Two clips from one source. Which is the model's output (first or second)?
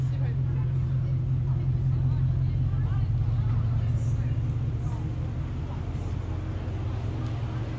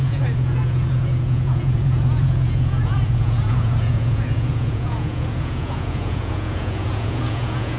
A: second